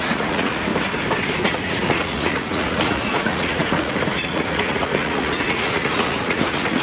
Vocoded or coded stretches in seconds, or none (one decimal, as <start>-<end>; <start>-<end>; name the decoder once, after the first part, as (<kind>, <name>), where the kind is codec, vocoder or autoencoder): 0.0-0.7 (vocoder, Vocos); 1.4-6.8